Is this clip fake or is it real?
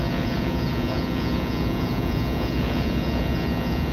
fake